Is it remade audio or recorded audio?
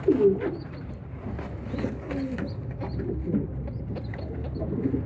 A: recorded